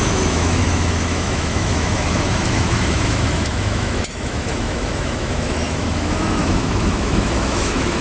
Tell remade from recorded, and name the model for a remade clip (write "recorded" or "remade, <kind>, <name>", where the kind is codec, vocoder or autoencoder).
remade, autoencoder, DAC-VAE